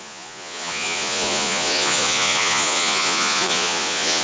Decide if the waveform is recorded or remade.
remade